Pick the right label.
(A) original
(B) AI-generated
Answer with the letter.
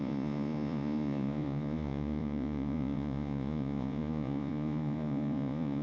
B